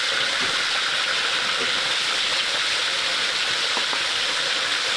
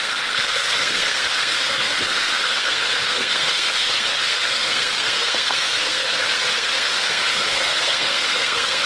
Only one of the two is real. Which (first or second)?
first